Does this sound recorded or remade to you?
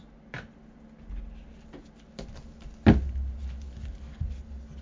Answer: recorded